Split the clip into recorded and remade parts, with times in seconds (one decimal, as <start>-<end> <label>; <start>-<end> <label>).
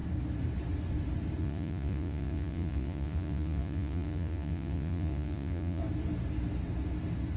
0.0-1.4 recorded; 1.4-5.8 remade; 5.8-7.4 recorded